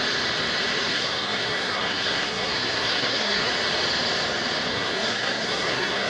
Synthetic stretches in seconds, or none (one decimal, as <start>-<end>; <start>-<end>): 0.9-3.5; 4.7-6.1